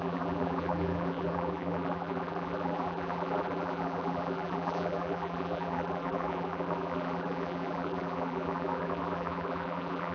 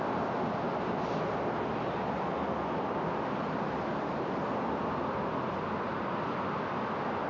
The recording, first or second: second